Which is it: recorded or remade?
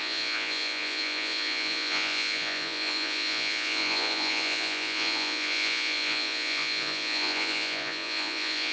remade